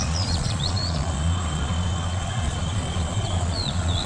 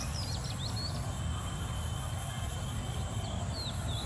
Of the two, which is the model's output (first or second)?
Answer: first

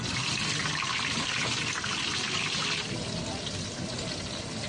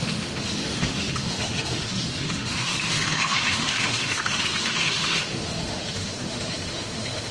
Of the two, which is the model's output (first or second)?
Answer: second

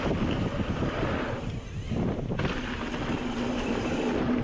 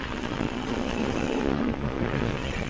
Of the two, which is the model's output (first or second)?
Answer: second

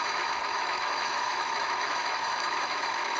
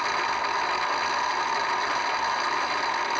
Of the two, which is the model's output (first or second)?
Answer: first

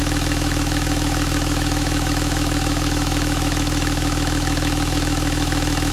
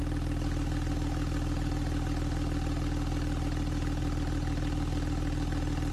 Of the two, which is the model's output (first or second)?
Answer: first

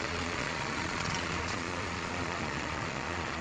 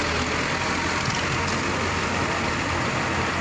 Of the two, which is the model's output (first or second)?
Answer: first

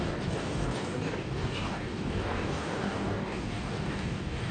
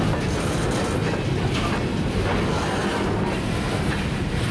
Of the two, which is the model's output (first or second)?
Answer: first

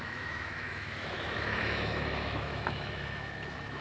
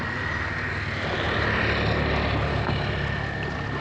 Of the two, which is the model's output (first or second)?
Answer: first